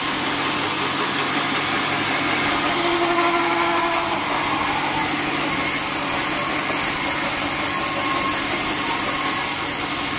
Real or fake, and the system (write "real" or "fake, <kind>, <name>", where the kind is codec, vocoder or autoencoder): real